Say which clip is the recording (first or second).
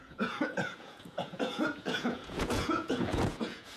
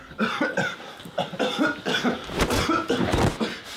second